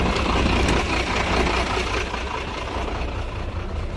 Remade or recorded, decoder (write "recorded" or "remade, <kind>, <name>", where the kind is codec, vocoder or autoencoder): recorded